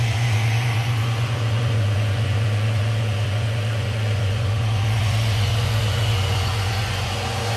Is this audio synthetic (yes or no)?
yes